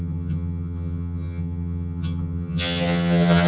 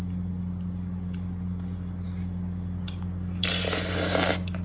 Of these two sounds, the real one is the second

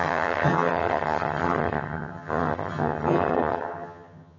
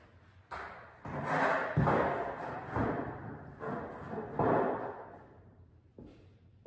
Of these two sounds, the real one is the second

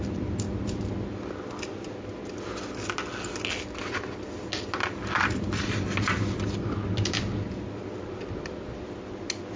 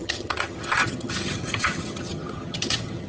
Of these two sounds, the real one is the first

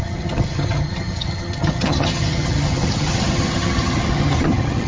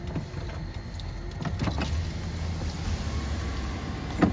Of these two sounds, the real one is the second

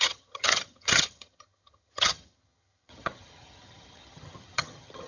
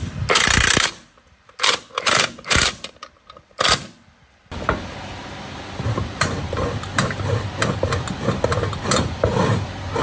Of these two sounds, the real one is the second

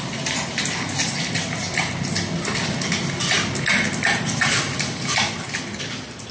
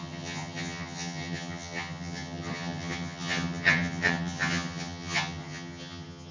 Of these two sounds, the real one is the first